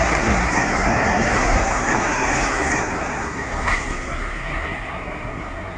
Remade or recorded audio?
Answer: remade